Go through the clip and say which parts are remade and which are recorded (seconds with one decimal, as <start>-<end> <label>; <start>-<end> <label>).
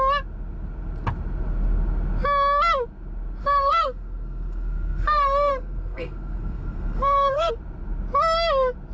0.0-3.4 recorded; 3.4-7.5 remade; 7.5-8.9 recorded